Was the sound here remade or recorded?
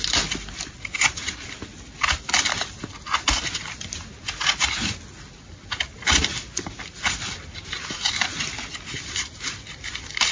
recorded